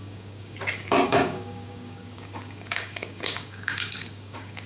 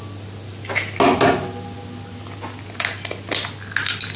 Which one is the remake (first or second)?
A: first